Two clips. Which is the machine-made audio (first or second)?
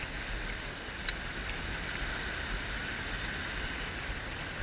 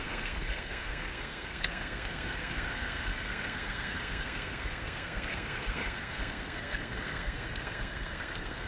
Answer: second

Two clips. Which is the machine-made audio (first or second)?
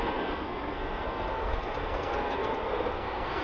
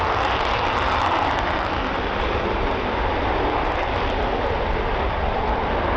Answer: first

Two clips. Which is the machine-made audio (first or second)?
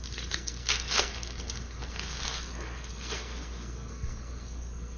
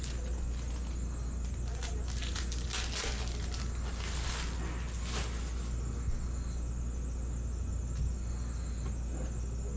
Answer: first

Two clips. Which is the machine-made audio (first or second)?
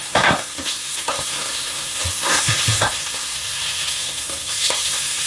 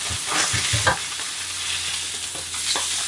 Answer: first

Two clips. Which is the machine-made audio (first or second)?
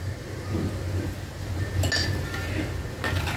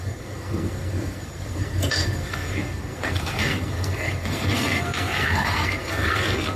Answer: second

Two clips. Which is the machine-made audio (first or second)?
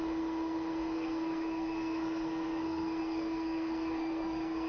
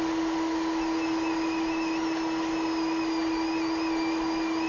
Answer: first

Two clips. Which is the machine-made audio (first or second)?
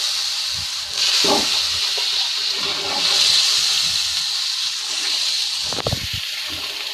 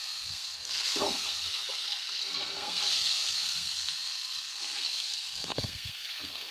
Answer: second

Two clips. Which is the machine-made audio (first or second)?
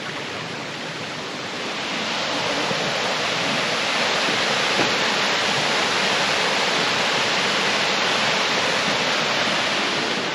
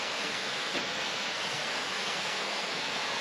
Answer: second